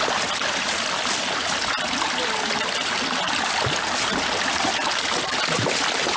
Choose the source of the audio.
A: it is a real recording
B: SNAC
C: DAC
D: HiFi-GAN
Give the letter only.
A